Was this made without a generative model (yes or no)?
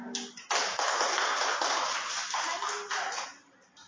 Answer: yes